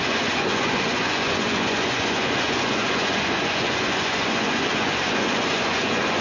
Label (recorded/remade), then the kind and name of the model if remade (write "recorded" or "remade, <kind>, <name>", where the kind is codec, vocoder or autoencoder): remade, vocoder, Vocos